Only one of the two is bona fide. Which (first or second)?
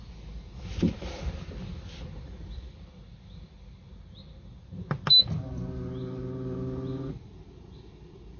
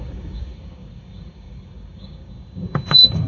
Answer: first